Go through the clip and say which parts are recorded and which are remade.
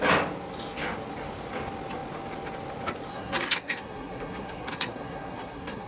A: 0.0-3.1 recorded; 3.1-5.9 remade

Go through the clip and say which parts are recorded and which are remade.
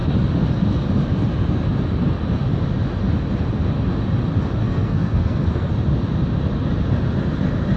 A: 0.0-4.6 recorded; 4.6-5.7 remade; 5.7-7.8 recorded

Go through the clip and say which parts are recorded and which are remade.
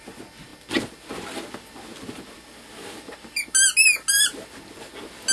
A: 0.0-5.3 recorded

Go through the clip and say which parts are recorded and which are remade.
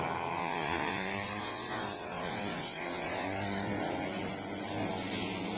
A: 0.0-0.4 recorded; 0.4-3.8 remade; 3.8-5.6 recorded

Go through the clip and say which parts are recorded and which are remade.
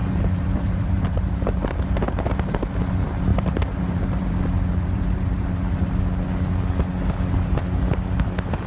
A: 0.0-2.8 remade; 2.8-3.3 recorded; 3.3-6.0 remade; 6.0-8.7 recorded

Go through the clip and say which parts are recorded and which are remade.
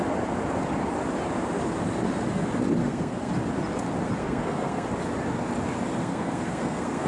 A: 0.0-2.8 recorded; 2.8-3.3 remade; 3.3-4.2 recorded; 4.2-4.9 remade; 4.9-6.0 recorded; 6.0-7.1 remade